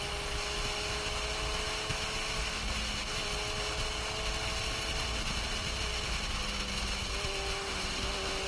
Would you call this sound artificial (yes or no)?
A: no